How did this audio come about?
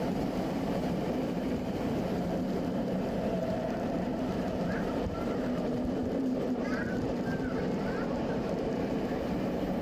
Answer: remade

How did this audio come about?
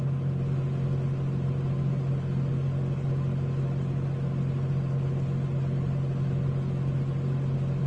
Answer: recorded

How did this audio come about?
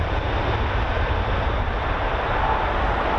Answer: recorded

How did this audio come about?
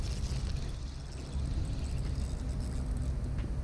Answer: recorded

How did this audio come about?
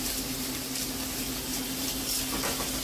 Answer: recorded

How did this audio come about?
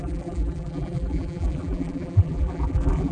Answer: remade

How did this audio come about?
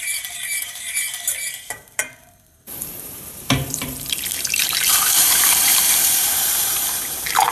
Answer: remade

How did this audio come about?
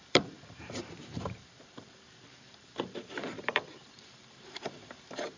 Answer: remade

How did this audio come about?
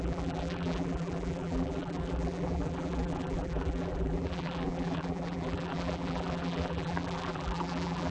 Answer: remade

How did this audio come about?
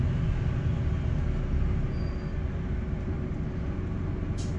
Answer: recorded